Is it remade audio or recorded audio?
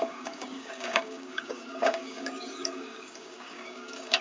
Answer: remade